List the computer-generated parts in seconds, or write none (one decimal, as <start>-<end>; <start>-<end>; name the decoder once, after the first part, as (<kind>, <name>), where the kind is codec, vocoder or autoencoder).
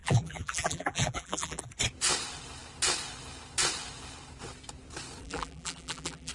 0.0-1.7 (vocoder, BigVGAN v2); 5.2-6.3